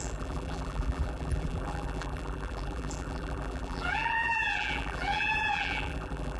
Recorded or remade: remade